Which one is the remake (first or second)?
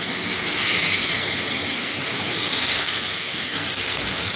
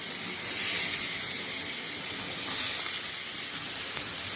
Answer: first